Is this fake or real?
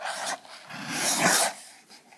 real